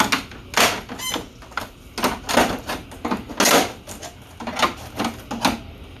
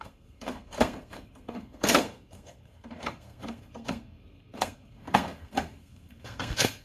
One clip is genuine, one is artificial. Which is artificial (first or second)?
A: second